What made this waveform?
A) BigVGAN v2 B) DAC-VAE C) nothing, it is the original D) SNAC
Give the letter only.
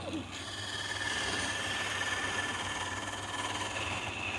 C